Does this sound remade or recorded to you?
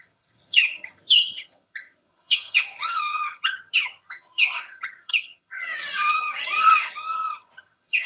remade